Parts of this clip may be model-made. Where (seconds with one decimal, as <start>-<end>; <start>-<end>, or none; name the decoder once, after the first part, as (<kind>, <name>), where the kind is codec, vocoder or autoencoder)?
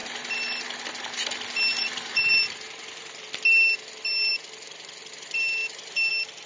0.0-0.8 (vocoder, BigVGAN v2); 1.7-2.5; 5.6-6.1